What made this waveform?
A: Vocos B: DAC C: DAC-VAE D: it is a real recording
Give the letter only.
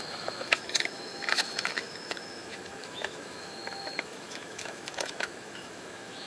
C